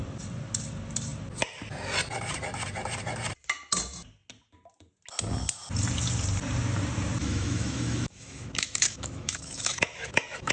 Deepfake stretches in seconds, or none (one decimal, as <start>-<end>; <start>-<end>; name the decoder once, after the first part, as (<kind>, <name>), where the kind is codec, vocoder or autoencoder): 7.2-10.5 (autoencoder, DAC-VAE)